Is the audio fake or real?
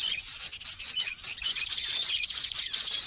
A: fake